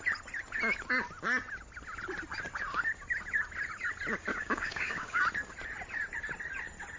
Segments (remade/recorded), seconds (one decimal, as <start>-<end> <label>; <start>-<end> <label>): 0.0-4.3 recorded; 4.3-5.2 remade; 5.2-7.0 recorded